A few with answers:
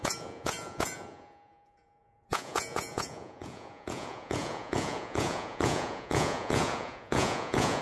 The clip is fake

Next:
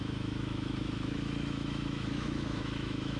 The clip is fake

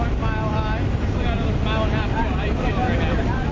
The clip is real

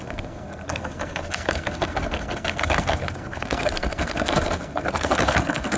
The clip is fake